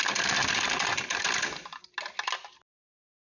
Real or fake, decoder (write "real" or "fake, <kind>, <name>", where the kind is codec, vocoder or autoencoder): real